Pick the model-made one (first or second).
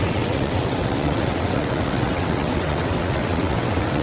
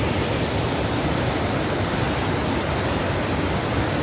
first